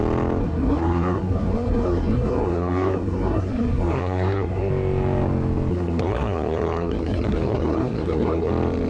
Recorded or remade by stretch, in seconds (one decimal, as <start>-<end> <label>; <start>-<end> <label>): 0.0-0.4 recorded; 0.4-4.7 remade; 4.7-5.7 recorded; 5.7-8.5 remade; 8.5-8.9 recorded